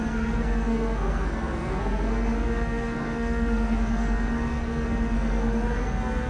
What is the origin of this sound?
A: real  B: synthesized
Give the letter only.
B